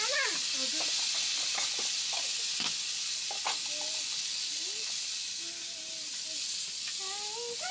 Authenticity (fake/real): real